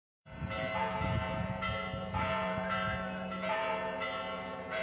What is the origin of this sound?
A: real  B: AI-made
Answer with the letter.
B